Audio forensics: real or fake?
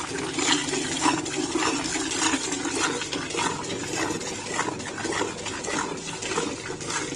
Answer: real